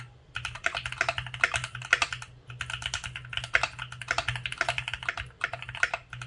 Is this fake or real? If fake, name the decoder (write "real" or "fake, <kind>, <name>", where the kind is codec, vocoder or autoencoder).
real